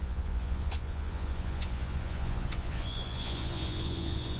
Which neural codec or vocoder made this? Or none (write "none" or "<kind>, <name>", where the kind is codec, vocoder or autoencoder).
vocoder, Vocos